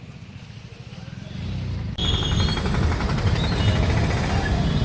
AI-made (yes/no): no